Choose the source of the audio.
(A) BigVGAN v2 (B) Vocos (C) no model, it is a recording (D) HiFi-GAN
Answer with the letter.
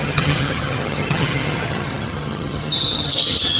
D